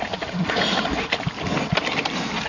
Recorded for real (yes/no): yes